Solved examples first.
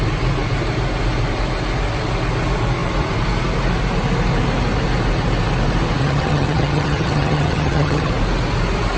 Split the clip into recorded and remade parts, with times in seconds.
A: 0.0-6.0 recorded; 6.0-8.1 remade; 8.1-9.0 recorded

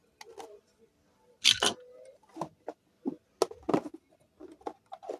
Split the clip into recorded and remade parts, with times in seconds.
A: 0.0-2.3 recorded; 2.3-2.9 remade; 2.9-5.2 recorded

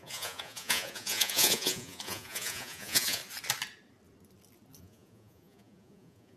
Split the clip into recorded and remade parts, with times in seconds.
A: 0.0-3.2 remade; 3.2-4.8 recorded; 4.8-6.4 remade

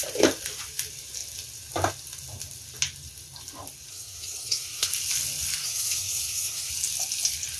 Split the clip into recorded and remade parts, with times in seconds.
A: 0.0-3.9 recorded; 3.9-4.9 remade; 4.9-5.6 recorded; 5.6-6.7 remade; 6.7-7.6 recorded